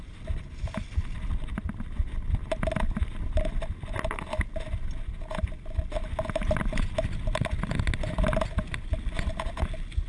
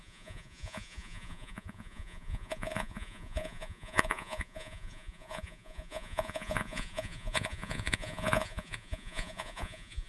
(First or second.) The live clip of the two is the first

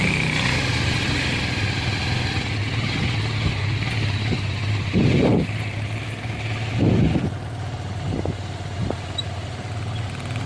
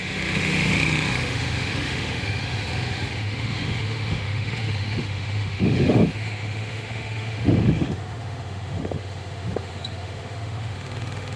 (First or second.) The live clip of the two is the first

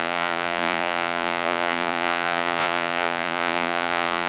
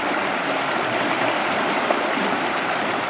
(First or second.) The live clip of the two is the second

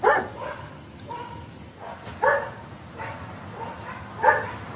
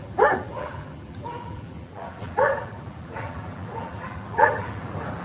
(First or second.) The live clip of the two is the first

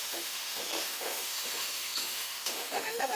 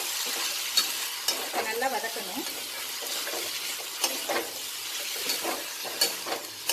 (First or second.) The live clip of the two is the second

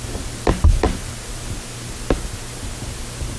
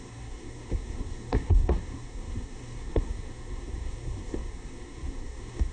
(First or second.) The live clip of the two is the first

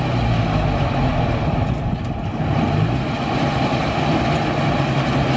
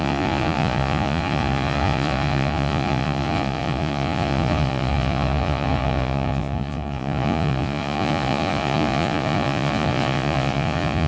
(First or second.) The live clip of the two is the first